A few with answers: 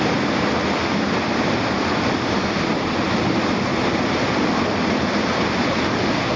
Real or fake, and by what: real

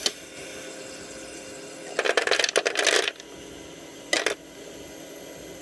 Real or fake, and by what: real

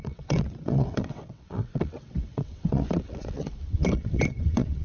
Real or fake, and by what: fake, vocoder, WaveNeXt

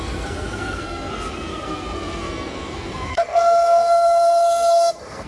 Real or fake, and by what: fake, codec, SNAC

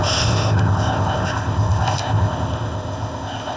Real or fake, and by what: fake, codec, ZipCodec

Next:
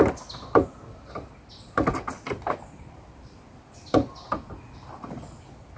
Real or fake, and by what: real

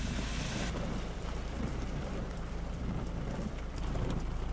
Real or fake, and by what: fake, vocoder, BigVGAN v2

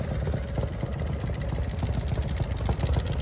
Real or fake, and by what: real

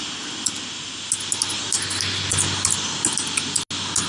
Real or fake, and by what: real